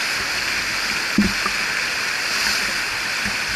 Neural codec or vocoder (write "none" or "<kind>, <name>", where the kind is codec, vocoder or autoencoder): none